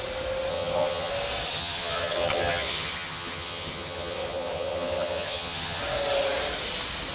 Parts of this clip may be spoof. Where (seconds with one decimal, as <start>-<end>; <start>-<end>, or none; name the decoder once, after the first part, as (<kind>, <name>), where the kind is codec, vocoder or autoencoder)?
0.5-1.1 (vocoder, HiFi-GAN); 1.5-5.8